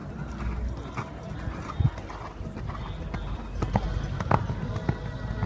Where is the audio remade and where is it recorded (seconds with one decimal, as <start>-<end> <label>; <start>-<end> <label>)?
0.0-5.5 recorded